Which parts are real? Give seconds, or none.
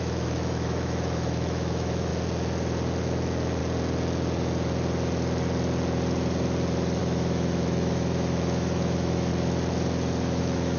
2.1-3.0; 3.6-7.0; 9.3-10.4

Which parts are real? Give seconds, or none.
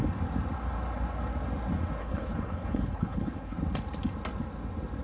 0.0-2.0; 3.6-5.0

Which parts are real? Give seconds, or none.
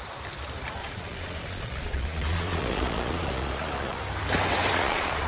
0.0-0.8; 4.0-4.7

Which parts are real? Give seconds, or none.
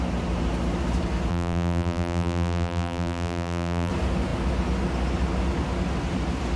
0.0-1.3; 3.9-6.6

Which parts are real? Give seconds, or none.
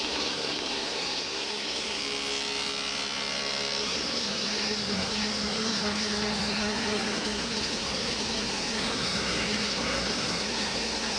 2.0-3.8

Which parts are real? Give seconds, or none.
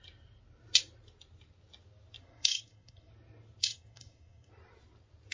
0.0-2.2; 3.1-3.6; 4.5-5.3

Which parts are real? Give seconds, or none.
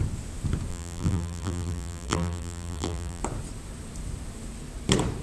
0.0-0.7; 3.2-5.2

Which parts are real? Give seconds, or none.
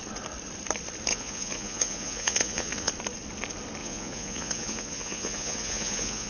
0.0-1.1; 2.9-3.8